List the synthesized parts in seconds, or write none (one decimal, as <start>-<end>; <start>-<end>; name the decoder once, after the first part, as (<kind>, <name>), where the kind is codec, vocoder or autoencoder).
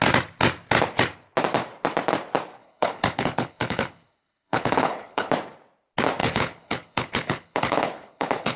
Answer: 2.6-5.3 (codec, HILCodec); 6.2-8.6